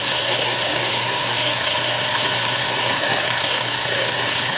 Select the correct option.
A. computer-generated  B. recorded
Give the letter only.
A